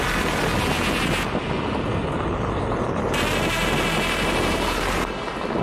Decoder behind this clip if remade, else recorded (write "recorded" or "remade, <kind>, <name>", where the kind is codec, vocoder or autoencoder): recorded